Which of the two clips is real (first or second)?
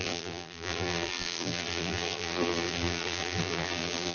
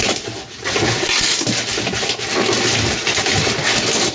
second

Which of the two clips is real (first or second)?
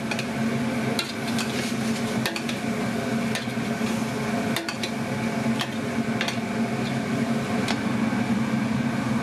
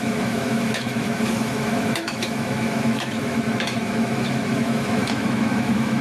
first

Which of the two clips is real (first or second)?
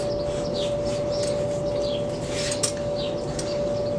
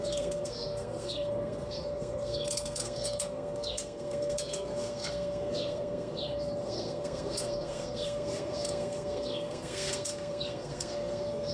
first